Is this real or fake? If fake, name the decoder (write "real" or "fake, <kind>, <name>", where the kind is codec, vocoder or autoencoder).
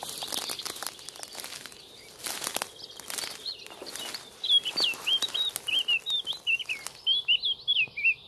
real